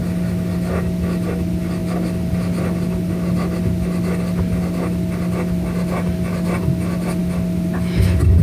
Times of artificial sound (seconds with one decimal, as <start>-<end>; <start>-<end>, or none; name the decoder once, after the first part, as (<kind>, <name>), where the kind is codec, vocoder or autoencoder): none